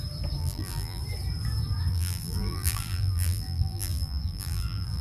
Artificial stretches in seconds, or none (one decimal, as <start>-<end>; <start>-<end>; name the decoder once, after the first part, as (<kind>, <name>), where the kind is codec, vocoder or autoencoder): 0.4-1.0 (vocoder, BigVGAN v2); 1.9-5.0